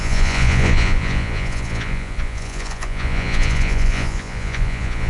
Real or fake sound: fake